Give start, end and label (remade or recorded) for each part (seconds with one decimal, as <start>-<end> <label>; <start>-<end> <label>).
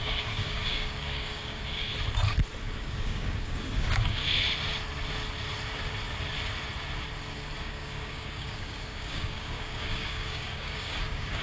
0.0-1.9 remade; 1.9-2.6 recorded; 2.6-4.2 remade; 4.2-7.6 recorded; 7.6-11.4 remade